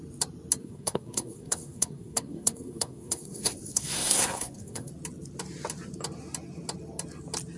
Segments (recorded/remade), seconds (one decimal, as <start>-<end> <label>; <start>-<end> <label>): 0.0-0.6 recorded; 0.6-4.9 remade; 4.9-7.6 recorded